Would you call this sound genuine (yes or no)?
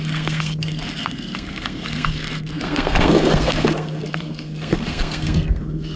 no